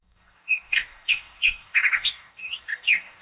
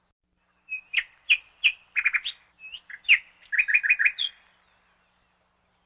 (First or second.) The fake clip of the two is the first